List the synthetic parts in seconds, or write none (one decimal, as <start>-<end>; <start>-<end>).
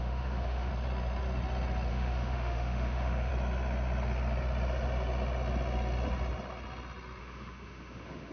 0.0-0.7; 1.9-3.3; 7.2-8.3